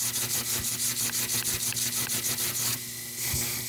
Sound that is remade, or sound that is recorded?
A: recorded